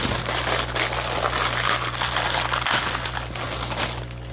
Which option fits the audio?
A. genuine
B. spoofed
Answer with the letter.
A